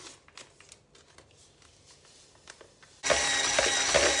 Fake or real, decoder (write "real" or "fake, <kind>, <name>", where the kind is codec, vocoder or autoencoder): real